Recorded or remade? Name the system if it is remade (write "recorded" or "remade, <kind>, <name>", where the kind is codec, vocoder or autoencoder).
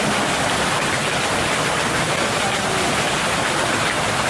recorded